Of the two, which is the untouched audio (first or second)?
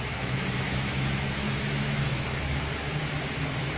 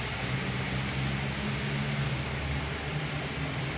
second